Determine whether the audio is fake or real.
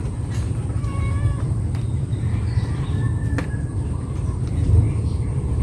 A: fake